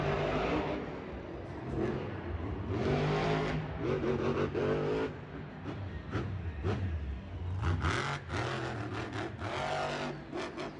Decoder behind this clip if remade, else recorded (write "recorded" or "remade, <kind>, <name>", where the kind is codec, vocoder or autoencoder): recorded